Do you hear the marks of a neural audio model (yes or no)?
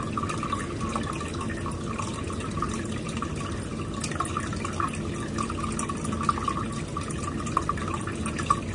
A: no